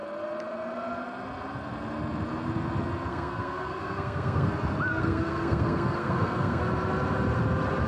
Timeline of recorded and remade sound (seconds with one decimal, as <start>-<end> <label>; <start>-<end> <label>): 0.0-3.1 recorded; 3.1-4.5 remade; 4.5-4.9 recorded; 4.9-6.6 remade; 6.6-7.9 recorded